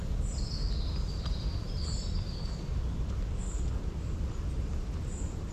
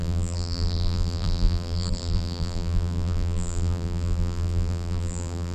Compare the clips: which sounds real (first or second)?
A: first